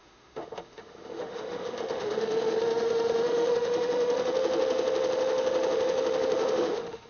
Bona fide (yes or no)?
no